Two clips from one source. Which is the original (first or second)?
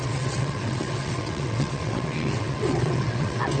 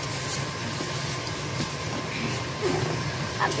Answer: second